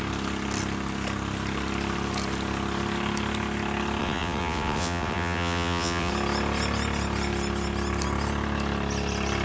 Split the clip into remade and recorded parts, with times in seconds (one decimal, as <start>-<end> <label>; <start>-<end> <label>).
0.0-4.0 recorded; 4.0-6.1 remade; 6.1-9.4 recorded